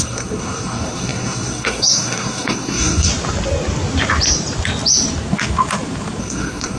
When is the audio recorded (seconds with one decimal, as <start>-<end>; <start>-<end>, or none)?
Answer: 3.1-6.2